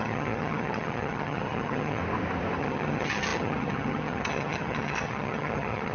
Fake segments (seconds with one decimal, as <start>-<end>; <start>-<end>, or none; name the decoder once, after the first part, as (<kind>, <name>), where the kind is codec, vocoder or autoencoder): 0.0-2.0 (vocoder, HiFi-GAN); 2.6-5.9